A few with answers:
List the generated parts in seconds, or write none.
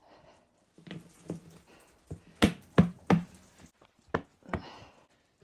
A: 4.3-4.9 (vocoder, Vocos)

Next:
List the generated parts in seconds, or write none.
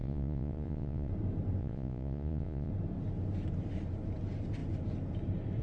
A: 0.0-1.1 (vocoder, Vocos); 1.6-2.7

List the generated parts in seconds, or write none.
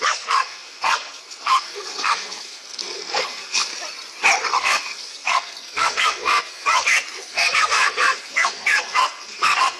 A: 0.0-3.7 (codec, SNAC); 4.6-9.8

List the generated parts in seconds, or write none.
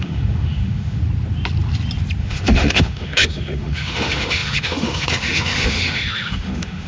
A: 0.0-1.0 (autoencoder, DAC-VAE); 2.2-6.9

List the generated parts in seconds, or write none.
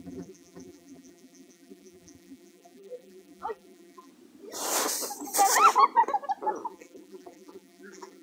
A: 0.0-4.1 (vocoder, BigVGAN v2); 6.7-8.2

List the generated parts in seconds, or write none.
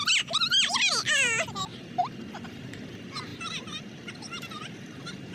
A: 0.0-1.7 (vocoder, BigVGAN v2); 2.3-5.3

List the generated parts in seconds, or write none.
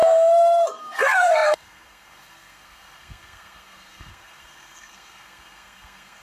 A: 0.0-6.2 (codec, SNAC)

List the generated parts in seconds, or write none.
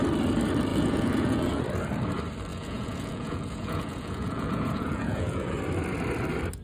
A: 0.7-1.6 (vocoder, Vocos); 2.5-5.6